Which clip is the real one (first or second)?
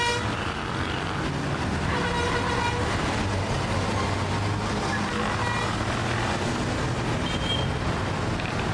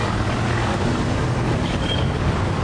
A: first